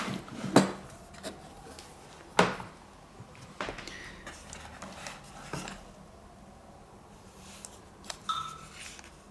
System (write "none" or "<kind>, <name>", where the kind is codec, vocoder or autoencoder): none